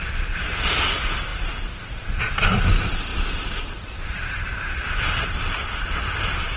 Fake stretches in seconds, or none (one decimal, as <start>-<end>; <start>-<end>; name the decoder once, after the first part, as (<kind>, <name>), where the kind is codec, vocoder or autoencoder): 1.3-2.0 (vocoder, BigVGAN v2)